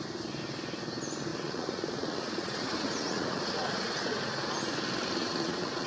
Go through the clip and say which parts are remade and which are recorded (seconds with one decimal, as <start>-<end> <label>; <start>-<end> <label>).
0.0-1.3 recorded; 1.3-4.5 remade; 4.5-5.2 recorded; 5.2-5.9 remade